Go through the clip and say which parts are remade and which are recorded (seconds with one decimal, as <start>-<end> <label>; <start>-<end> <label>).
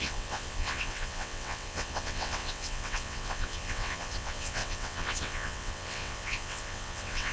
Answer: 0.0-7.3 remade